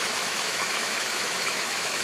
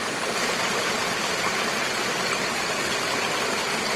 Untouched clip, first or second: second